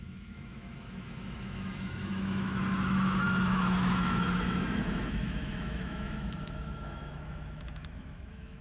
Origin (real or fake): fake